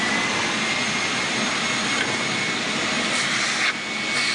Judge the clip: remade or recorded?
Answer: recorded